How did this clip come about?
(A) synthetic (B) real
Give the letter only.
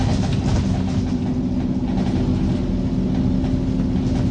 B